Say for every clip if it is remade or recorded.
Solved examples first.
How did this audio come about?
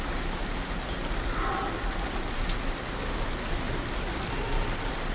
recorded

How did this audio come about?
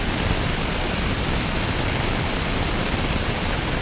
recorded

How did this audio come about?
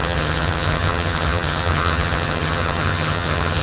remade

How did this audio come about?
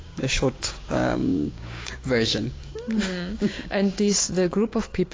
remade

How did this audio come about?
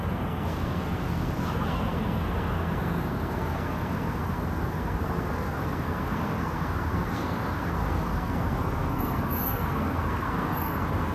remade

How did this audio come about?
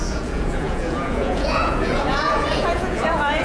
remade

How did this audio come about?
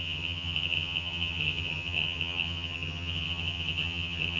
remade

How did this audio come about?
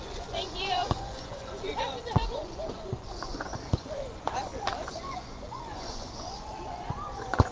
remade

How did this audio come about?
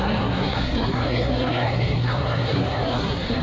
remade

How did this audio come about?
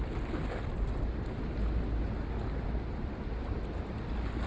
recorded